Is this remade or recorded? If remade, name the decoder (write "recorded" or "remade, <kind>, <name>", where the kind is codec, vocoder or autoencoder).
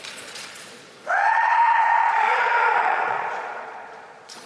remade, vocoder, Vocos